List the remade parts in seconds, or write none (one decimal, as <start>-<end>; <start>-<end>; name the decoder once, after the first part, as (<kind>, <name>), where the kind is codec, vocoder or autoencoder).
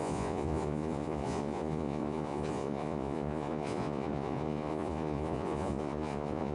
0.0-6.5 (vocoder, Vocos)